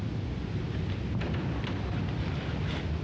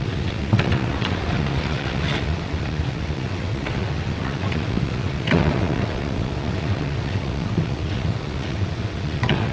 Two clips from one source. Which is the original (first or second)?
first